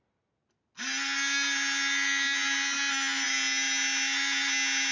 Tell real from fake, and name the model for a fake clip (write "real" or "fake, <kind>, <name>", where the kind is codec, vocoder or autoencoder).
real